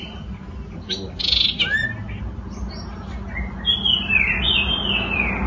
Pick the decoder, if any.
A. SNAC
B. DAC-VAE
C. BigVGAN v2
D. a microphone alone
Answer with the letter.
D